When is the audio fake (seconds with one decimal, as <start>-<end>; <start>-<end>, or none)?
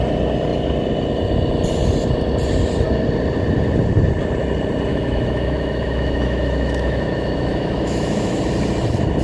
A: 4.9-8.4